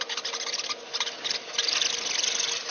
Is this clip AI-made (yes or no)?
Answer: no